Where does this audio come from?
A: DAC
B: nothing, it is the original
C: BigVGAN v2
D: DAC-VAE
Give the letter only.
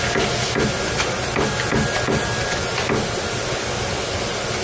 B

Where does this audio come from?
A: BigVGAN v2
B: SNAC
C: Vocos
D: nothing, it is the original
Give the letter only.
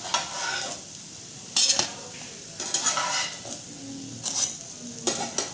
D